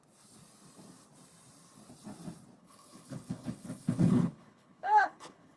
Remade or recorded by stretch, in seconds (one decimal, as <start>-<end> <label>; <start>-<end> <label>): 0.0-2.6 recorded; 2.6-5.6 remade